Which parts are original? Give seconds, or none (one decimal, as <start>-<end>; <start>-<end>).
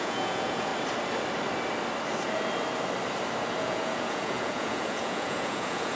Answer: 0.7-3.6